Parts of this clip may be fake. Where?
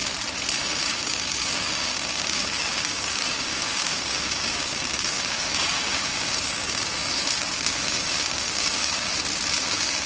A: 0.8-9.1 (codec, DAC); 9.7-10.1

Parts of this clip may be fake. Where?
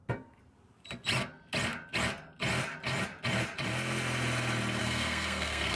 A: 4.8-5.8 (codec, SNAC)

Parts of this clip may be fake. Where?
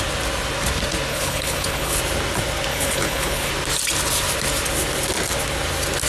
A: 1.1-2.0 (codec, HILCodec); 2.7-3.5